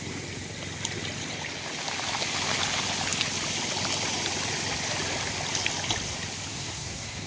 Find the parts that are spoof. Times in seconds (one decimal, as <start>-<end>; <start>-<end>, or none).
6.5-7.3